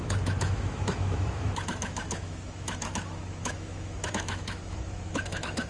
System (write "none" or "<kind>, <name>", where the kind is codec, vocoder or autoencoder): autoencoder, DAC-VAE